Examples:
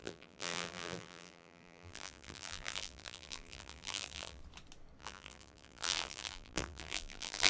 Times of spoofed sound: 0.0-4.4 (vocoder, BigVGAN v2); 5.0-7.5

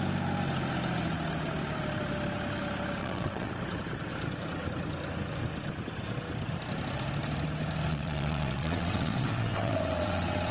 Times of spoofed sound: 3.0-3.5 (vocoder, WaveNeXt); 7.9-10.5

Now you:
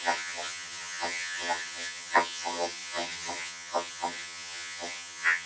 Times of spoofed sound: 0.0-5.5 (vocoder, HiFi-GAN)